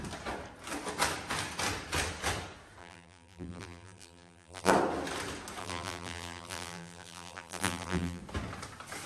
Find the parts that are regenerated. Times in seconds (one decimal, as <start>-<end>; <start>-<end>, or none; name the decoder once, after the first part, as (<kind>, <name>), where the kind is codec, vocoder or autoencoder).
2.8-4.7 (vocoder, BigVGAN v2); 5.6-8.2